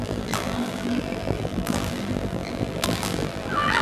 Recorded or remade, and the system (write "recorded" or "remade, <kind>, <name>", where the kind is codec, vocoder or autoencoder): remade, vocoder, BigVGAN v2